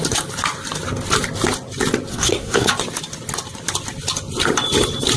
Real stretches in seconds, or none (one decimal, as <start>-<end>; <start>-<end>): 0.0-2.1; 2.7-5.2